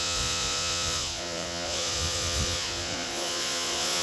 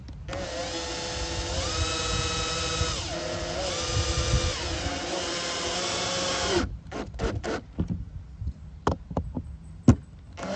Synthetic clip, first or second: first